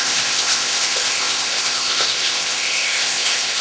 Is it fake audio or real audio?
fake